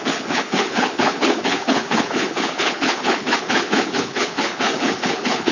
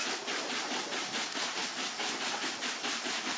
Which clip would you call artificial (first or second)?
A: first